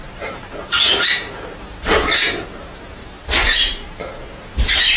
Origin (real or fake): real